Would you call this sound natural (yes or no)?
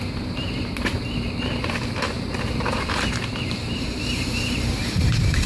no